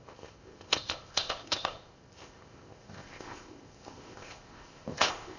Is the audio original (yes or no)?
no